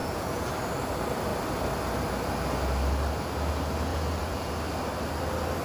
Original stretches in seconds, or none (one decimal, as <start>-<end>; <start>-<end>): 0.5-3.9; 4.5-5.6